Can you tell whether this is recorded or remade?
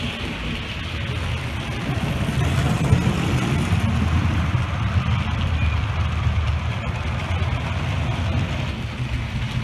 recorded